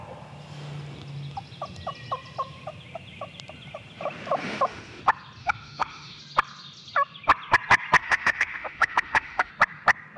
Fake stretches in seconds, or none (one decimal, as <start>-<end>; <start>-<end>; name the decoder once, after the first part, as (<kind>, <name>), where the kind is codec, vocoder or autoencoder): 4.4-5.0 (autoencoder, DAC-VAE); 5.4-6.2; 8.0-9.5